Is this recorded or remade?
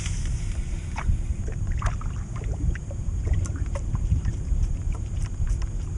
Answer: remade